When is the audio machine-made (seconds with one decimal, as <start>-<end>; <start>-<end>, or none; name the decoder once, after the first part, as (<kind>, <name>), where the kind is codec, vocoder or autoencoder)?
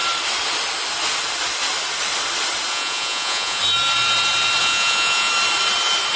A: 2.7-3.6 (vocoder, Vocos); 4.6-5.3